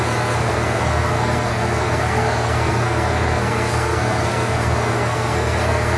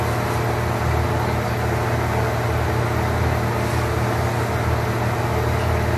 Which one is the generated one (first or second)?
first